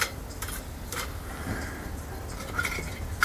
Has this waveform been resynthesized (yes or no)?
no